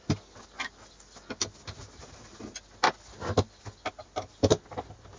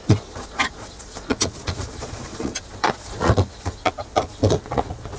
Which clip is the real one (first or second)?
first